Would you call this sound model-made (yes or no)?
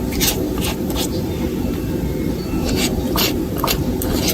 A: no